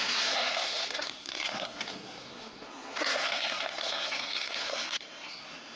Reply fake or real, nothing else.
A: fake